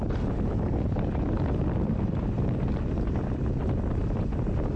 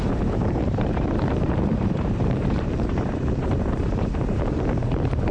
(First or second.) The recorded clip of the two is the first